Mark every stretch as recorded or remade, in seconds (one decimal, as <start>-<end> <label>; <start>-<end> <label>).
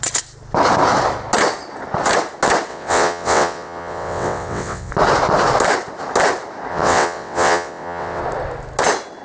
0.0-2.7 recorded; 2.7-4.9 remade; 4.9-6.7 recorded; 6.7-8.2 remade; 8.2-9.2 recorded